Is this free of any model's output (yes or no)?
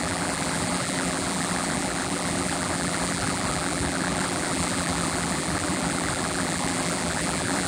no